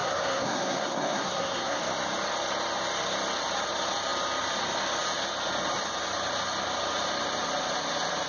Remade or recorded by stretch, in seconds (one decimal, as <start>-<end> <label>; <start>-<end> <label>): 0.0-1.8 remade; 1.8-8.3 recorded

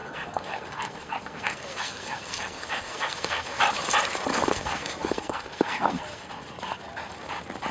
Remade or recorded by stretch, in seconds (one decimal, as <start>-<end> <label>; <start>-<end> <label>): 0.0-3.6 remade; 3.6-4.3 recorded; 4.3-6.3 remade; 6.3-7.7 recorded

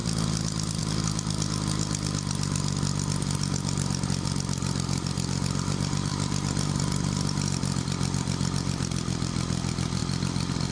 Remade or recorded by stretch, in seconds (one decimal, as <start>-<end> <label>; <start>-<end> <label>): 0.0-6.1 recorded; 6.1-7.8 remade; 7.8-10.7 recorded